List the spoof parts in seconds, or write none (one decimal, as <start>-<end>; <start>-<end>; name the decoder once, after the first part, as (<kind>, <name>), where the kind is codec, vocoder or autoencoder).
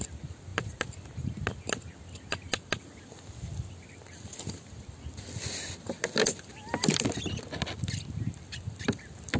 none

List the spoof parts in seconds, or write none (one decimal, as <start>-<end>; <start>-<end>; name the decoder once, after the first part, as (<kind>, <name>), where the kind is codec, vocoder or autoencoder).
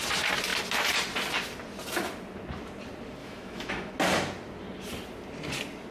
3.2-3.9 (autoencoder, DAC-VAE)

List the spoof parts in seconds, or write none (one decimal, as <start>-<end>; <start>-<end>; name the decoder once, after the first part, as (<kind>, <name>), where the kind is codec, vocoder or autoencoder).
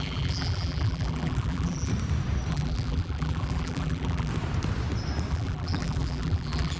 0.0-1.9 (vocoder, BigVGAN v2); 2.5-4.3; 5.3-6.8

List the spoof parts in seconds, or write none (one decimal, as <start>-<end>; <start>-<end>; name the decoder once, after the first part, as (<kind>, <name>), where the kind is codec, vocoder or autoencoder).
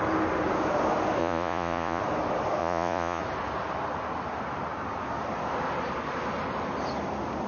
1.2-2.0 (vocoder, Vocos); 2.6-3.2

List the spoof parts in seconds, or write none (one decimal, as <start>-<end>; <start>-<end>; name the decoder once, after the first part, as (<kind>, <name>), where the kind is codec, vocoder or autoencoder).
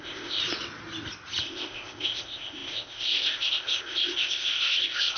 0.0-0.4 (codec, ZipCodec); 1.4-5.2